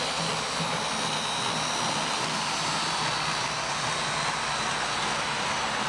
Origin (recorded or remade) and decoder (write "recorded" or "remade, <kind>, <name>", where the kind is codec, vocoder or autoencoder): recorded